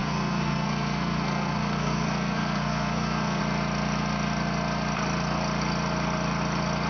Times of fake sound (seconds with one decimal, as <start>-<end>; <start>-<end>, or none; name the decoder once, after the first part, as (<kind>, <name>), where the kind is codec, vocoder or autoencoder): 0.0-3.4 (codec, SNAC)